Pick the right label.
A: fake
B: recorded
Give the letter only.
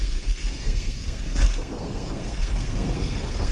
A